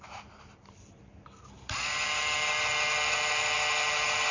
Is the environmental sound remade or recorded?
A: recorded